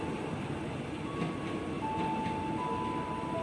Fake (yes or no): no